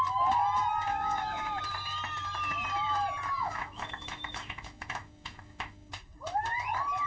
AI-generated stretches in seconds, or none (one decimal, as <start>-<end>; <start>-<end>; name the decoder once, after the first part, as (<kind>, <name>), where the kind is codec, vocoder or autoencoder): 0.9-1.6 (autoencoder, DAC-VAE); 3.4-5.9